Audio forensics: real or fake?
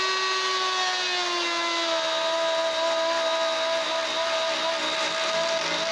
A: real